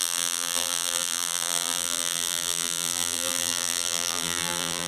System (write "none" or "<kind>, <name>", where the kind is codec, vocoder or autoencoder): vocoder, BigVGAN v2